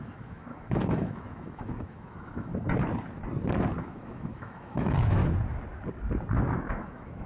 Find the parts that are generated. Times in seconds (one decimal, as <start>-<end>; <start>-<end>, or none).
0.0-2.5; 3.8-5.2; 6.7-7.3